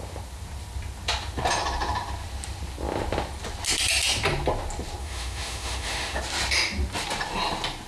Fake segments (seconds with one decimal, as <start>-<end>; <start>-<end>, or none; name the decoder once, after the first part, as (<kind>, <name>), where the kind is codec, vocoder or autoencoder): 5.0-6.2 (autoencoder, DAC-VAE)